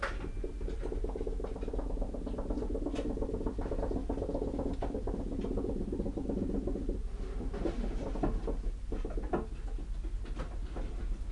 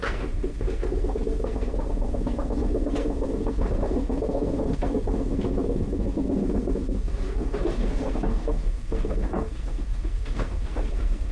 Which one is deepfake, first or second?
second